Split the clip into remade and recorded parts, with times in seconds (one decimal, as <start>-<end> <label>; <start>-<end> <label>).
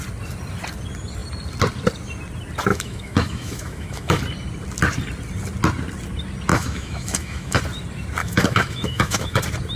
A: 0.0-2.7 recorded; 2.7-4.2 remade; 4.2-6.5 recorded; 6.5-7.6 remade; 7.6-8.2 recorded; 8.2-9.4 remade; 9.4-9.8 recorded